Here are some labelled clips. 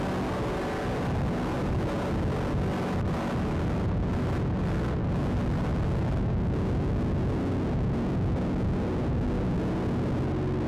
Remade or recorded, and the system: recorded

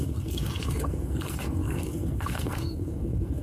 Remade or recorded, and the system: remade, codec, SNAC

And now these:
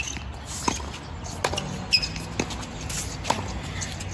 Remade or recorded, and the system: recorded